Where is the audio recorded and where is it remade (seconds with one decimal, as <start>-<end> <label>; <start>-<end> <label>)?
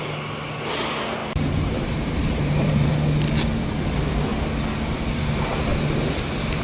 0.0-1.2 recorded; 1.2-2.9 remade; 2.9-6.6 recorded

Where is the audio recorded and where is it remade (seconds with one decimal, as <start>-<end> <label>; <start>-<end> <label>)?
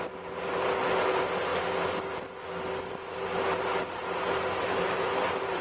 0.0-4.0 recorded; 4.0-5.6 remade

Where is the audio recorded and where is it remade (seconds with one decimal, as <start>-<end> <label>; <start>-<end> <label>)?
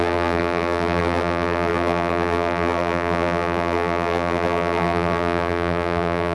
0.0-6.3 remade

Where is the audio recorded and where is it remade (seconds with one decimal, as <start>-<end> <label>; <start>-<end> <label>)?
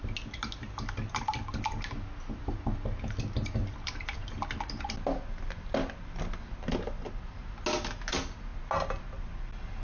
0.0-3.6 recorded; 3.6-4.3 remade; 4.3-9.8 recorded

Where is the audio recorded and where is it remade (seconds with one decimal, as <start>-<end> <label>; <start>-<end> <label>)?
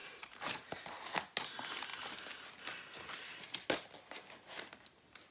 0.0-0.9 remade; 0.9-5.3 recorded